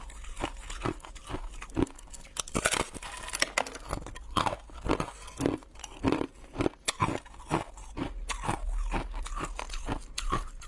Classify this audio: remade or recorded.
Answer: recorded